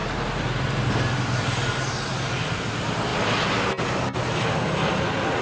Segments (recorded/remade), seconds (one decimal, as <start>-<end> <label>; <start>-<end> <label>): 0.0-5.4 recorded